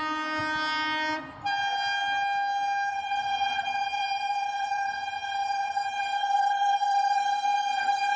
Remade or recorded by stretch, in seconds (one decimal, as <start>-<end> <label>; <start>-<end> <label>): 0.0-2.9 recorded; 2.9-8.2 remade